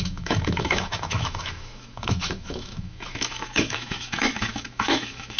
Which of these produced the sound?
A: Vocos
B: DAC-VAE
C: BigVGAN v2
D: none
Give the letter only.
B